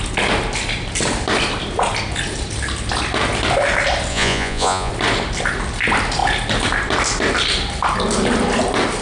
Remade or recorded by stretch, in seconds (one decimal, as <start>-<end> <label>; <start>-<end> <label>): 0.0-4.1 recorded; 4.1-4.9 remade; 4.9-9.0 recorded